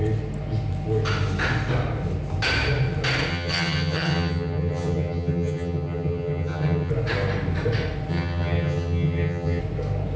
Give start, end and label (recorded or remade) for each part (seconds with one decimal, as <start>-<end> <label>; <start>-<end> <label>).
0.0-3.3 recorded; 3.3-6.9 remade; 6.9-8.1 recorded; 8.1-9.6 remade; 9.6-10.2 recorded